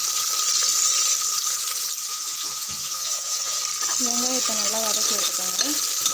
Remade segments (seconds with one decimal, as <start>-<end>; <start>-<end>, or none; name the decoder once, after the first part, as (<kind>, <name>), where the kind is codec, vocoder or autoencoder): 2.1-3.6 (vocoder, Vocos)